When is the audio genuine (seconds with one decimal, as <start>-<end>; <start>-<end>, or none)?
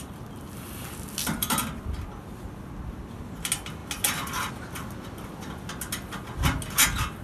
0.0-7.2